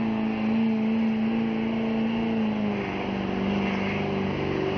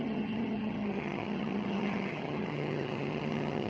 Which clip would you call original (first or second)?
first